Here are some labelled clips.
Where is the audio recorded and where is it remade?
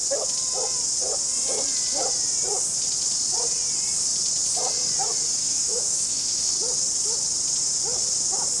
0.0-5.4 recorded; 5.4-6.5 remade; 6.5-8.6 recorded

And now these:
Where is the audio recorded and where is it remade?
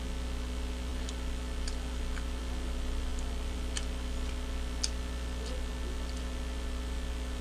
0.0-7.4 recorded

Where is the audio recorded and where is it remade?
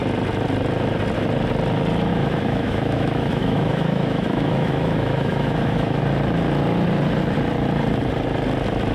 0.0-2.1 recorded; 2.1-6.0 remade; 6.0-8.9 recorded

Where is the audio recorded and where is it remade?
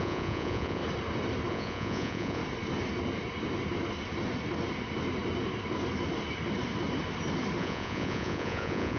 0.0-0.8 remade; 0.8-1.5 recorded; 1.5-2.4 remade; 2.4-7.6 recorded; 7.6-9.0 remade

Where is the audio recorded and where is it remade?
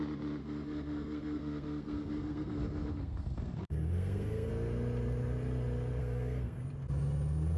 0.0-0.4 recorded; 0.4-4.5 remade; 4.5-6.0 recorded; 6.0-6.6 remade; 6.6-7.6 recorded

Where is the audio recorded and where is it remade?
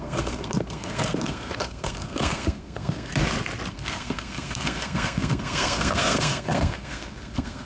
0.0-3.1 remade; 3.1-3.7 recorded; 3.7-7.7 remade